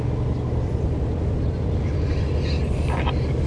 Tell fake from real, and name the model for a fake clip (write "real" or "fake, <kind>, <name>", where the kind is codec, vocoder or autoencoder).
real